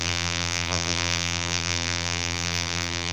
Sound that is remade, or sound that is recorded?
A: remade